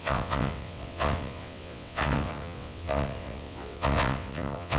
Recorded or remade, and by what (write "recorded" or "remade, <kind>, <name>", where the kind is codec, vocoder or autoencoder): remade, vocoder, WaveNeXt